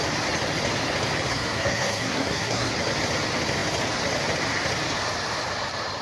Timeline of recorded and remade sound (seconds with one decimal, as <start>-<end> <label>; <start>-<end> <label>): 0.0-1.3 recorded; 1.3-2.7 remade; 2.7-6.0 recorded